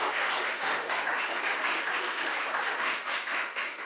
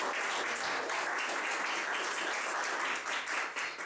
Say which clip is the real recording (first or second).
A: second